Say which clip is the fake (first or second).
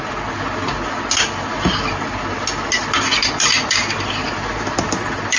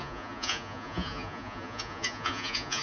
second